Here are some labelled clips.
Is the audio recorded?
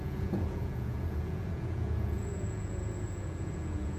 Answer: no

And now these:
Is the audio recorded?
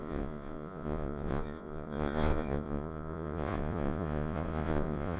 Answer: no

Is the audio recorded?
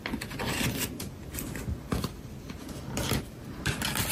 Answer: yes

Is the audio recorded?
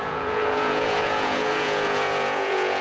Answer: no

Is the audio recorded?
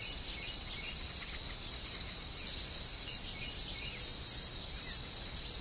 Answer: yes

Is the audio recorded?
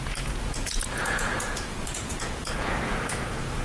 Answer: no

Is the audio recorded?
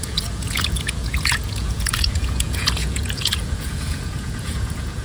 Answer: no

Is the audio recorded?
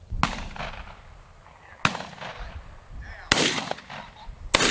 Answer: yes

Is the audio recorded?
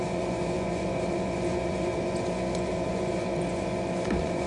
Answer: no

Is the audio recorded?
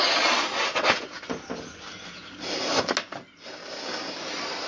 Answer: yes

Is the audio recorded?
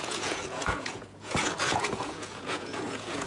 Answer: no